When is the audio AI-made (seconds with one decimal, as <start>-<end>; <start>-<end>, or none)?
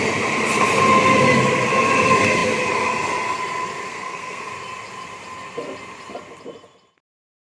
3.9-4.4